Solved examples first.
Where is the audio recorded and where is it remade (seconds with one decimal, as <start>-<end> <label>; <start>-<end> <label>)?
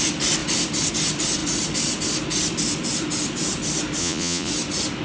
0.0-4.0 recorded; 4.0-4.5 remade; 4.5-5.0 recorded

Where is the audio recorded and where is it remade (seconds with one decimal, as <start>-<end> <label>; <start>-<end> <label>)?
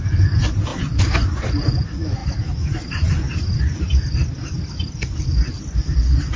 0.0-6.4 recorded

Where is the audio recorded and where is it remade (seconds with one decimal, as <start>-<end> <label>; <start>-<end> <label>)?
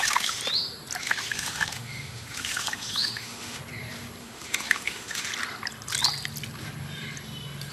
0.0-0.4 remade; 0.4-1.0 recorded; 1.0-3.6 remade; 3.6-4.2 recorded; 4.2-5.3 remade; 5.3-7.7 recorded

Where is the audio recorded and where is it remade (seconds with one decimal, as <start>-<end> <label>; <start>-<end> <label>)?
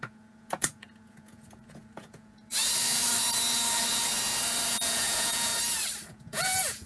0.0-2.6 remade; 2.6-4.7 recorded; 4.7-5.5 remade; 5.5-6.1 recorded; 6.1-6.9 remade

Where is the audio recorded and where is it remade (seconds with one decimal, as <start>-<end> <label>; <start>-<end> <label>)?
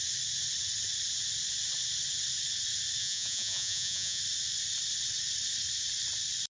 0.0-3.0 recorded; 3.0-4.2 remade; 4.2-6.5 recorded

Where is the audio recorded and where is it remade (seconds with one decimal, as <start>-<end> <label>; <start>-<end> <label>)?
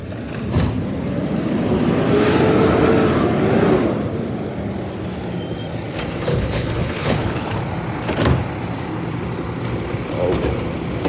0.0-6.3 recorded; 6.3-7.6 remade; 7.6-11.1 recorded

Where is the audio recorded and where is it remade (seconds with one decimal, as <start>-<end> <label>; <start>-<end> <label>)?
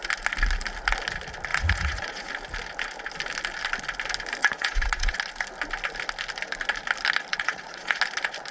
0.0-1.5 recorded; 1.5-2.3 remade; 2.3-4.4 recorded; 4.4-5.2 remade; 5.2-7.3 recorded; 7.3-8.0 remade; 8.0-8.5 recorded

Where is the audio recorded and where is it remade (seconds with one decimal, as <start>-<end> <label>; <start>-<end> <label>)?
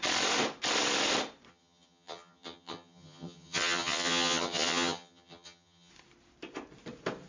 0.0-1.5 recorded; 1.5-5.9 remade; 5.9-7.3 recorded